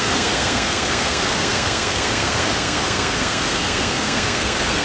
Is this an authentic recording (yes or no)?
no